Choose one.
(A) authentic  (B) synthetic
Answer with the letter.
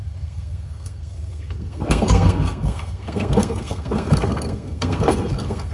B